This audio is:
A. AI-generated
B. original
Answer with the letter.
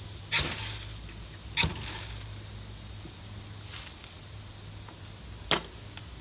B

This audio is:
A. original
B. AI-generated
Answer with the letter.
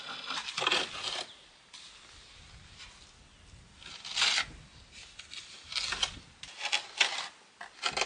A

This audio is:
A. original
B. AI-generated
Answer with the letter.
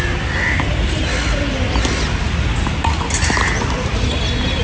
A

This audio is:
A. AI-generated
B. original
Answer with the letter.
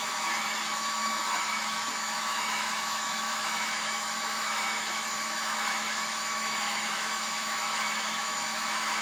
A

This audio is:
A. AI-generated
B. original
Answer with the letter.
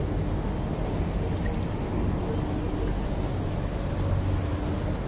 B